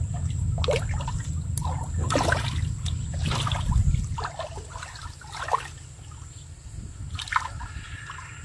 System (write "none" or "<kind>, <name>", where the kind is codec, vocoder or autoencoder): none